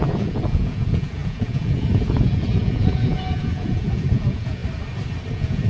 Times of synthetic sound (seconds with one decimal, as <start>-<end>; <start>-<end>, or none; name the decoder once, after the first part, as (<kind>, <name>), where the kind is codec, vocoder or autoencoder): 0.0-4.6 (vocoder, Vocos); 5.3-5.7